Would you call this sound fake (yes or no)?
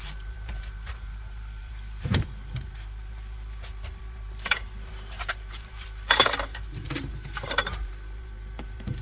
yes